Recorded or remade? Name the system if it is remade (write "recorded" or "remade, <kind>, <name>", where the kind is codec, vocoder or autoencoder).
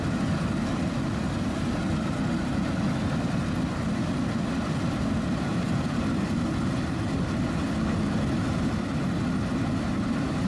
recorded